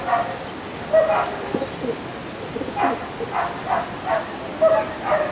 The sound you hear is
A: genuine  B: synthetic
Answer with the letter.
A